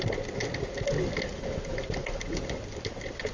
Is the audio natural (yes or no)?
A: yes